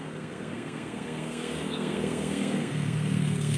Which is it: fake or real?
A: fake